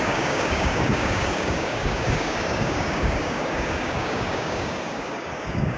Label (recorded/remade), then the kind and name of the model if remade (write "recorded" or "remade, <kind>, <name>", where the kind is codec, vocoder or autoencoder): remade, codec, DAC